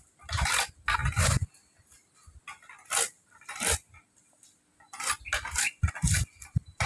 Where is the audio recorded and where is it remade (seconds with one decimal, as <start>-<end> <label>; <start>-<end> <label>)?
0.0-6.9 recorded